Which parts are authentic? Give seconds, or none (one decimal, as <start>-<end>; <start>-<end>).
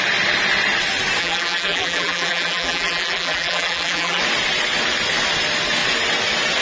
0.0-1.2; 4.2-6.6